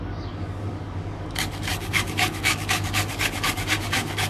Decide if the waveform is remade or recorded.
remade